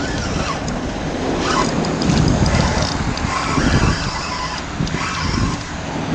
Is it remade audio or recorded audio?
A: recorded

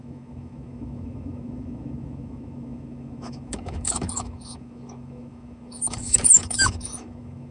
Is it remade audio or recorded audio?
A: remade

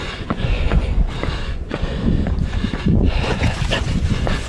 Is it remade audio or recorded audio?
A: remade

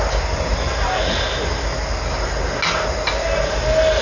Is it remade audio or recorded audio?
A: recorded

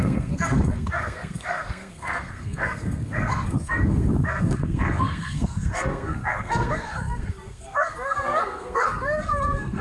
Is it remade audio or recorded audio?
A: remade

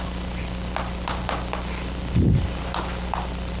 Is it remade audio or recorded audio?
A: recorded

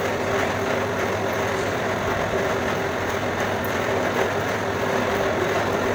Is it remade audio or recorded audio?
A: remade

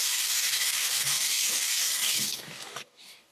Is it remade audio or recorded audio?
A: remade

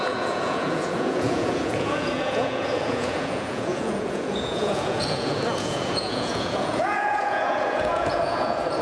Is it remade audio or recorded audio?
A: remade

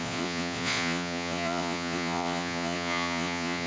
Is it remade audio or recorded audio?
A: remade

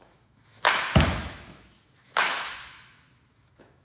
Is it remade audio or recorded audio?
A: remade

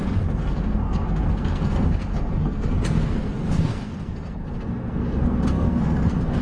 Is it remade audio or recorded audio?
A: remade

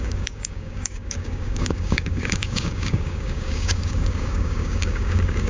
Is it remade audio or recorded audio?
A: remade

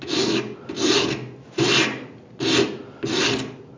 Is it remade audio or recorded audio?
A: recorded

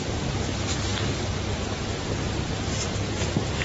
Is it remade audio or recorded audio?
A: recorded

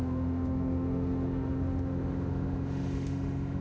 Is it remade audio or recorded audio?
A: remade